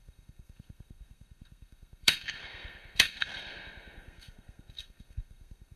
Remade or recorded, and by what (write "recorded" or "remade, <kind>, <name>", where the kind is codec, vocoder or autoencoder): remade, codec, SNAC